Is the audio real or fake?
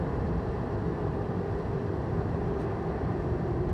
fake